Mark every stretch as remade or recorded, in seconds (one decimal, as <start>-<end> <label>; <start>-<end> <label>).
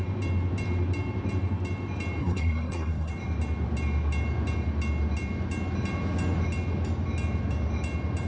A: 0.0-2.2 recorded; 2.2-3.1 remade; 3.1-8.3 recorded